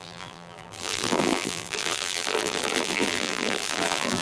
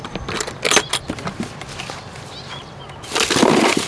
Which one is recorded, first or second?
second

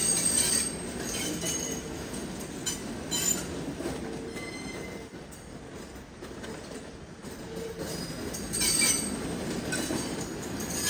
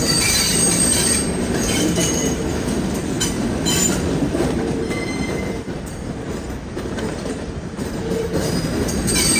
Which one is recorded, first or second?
first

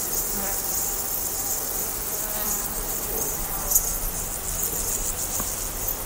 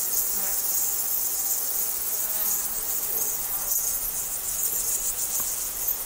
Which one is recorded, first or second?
first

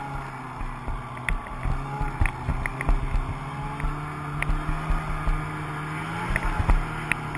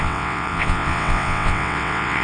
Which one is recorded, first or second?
first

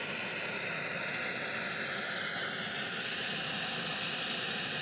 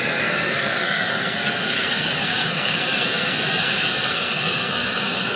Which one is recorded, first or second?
first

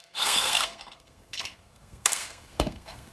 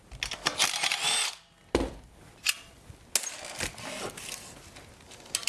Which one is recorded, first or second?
second